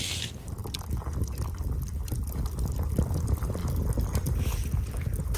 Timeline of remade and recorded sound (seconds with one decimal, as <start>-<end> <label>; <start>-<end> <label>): 0.0-5.4 recorded